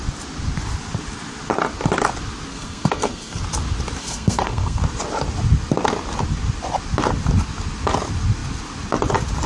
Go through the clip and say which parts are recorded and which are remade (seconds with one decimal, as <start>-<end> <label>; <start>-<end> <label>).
0.0-2.5 recorded; 2.5-3.4 remade; 3.4-4.0 recorded; 4.0-4.8 remade; 4.8-9.5 recorded